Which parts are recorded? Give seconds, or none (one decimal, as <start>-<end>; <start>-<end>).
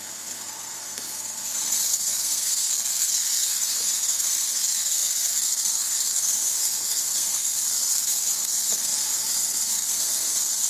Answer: none